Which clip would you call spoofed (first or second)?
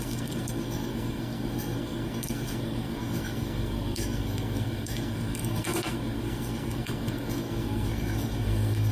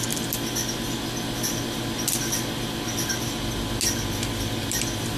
first